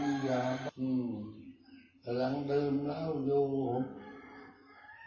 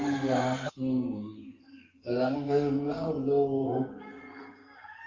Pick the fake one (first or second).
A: second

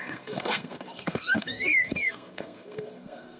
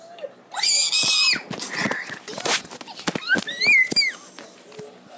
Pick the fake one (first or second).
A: first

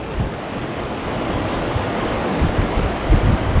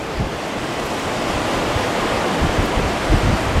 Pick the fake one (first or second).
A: first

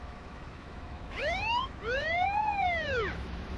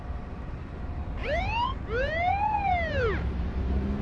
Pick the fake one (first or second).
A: first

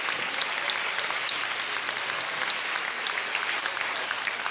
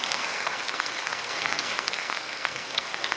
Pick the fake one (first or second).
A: second